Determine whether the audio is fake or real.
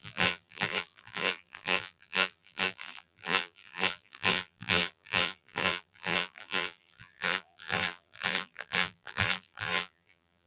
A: fake